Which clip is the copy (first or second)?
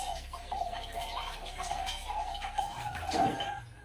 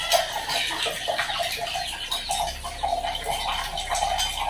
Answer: first